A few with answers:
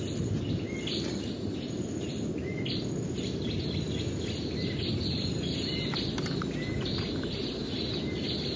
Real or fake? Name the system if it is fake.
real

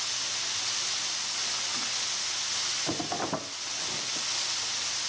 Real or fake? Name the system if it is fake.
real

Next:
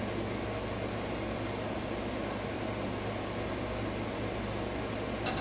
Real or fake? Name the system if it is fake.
real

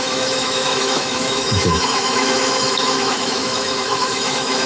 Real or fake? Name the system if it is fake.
fake, autoencoder, DAC-VAE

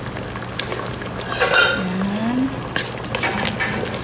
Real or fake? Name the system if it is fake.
real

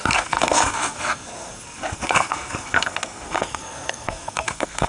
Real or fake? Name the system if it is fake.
fake, codec, SNAC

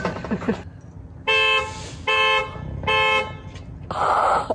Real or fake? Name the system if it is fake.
real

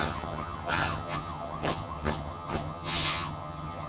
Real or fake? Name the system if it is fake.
fake, vocoder, HiFi-GAN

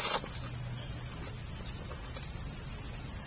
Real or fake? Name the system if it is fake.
real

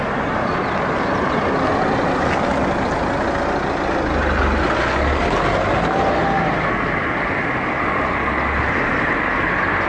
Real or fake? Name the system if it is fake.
real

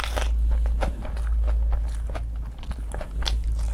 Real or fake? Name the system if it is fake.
real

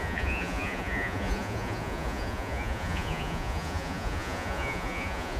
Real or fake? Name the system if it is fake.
fake, vocoder, Vocos